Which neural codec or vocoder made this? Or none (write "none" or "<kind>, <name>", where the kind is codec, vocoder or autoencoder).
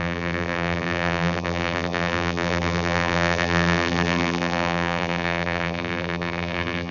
vocoder, BigVGAN v2